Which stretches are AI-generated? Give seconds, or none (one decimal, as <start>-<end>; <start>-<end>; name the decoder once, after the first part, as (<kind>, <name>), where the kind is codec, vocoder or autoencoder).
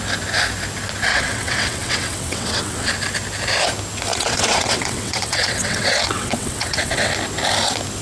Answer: 1.1-2.9 (vocoder, WaveNeXt); 4.1-7.1